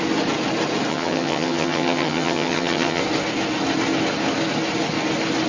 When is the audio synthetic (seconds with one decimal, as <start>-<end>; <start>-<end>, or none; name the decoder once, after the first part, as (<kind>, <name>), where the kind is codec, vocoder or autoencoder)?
0.9-3.0 (vocoder, HiFi-GAN)